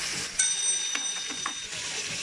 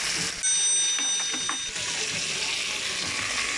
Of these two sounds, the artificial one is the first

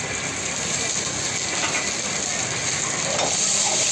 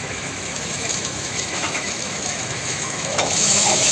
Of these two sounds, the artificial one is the second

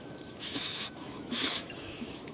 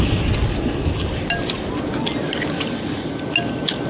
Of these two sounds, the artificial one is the first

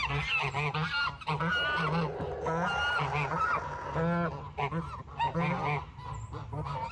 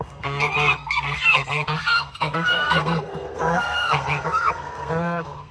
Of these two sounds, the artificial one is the second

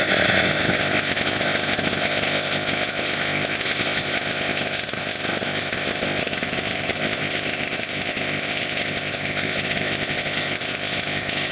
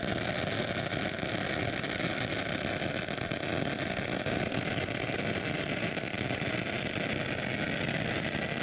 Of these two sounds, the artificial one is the first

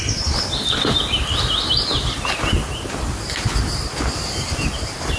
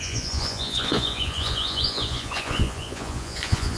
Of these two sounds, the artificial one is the second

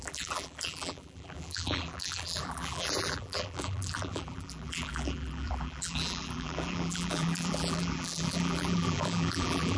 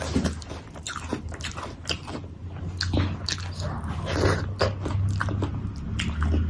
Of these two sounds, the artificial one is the first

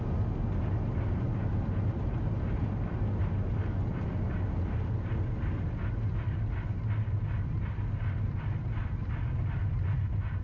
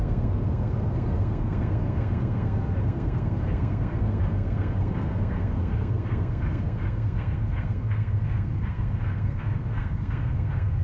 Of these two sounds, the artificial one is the second